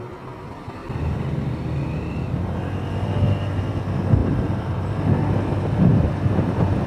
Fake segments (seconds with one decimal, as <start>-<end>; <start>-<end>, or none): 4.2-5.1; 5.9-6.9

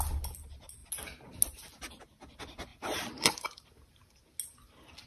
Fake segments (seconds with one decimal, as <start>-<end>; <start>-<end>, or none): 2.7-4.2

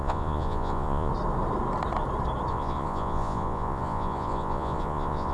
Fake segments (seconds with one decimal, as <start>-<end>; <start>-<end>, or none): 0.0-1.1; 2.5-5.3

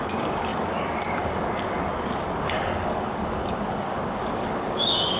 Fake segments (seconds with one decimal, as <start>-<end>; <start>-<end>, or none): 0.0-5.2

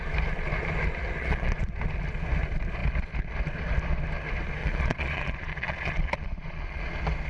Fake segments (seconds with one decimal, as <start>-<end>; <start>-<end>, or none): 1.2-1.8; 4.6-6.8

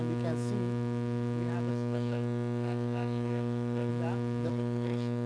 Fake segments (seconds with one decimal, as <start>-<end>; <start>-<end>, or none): 1.7-3.9; 4.5-5.3

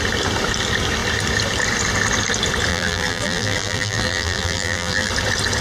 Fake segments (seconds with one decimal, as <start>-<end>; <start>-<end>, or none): 2.7-5.1

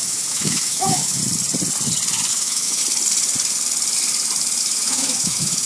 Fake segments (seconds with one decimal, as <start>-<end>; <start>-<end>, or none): 0.0-1.2; 2.3-2.8; 4.6-5.7